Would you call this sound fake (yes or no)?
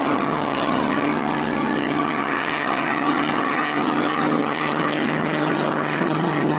yes